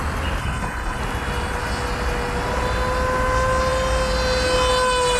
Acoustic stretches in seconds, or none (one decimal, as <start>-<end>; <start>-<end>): 0.0-0.4; 1.0-5.2